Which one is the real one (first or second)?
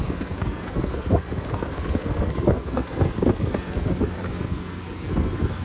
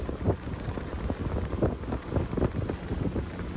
second